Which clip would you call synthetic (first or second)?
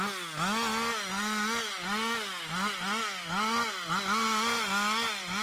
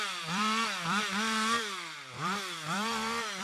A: second